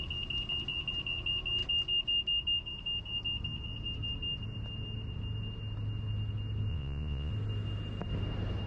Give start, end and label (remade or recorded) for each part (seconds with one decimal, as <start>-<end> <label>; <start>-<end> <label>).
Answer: 0.0-6.7 recorded; 6.7-7.3 remade; 7.3-8.7 recorded